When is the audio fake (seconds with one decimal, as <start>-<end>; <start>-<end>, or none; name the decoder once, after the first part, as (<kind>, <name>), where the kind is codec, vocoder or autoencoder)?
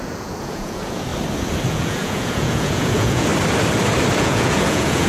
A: 0.0-1.1 (vocoder, Vocos); 1.7-3.3; 4.2-5.1